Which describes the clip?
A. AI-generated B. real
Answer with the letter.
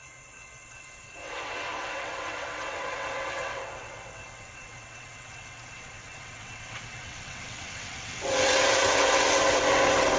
A